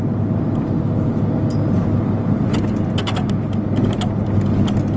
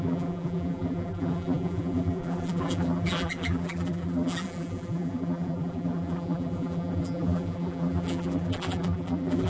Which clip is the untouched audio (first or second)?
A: first